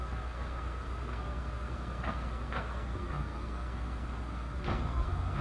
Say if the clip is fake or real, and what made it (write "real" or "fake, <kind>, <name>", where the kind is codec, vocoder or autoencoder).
fake, codec, SNAC